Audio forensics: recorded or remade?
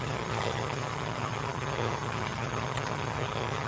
remade